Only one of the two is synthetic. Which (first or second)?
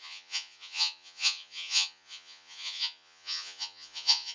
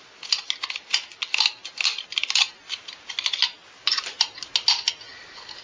first